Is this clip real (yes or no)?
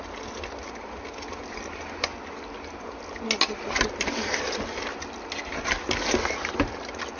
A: yes